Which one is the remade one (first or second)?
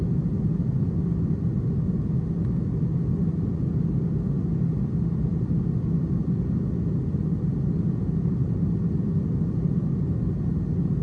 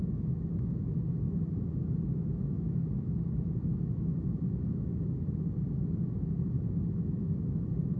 second